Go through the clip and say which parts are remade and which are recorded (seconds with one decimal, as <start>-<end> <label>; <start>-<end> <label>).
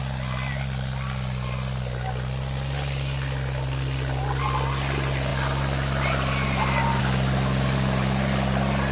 0.0-8.9 recorded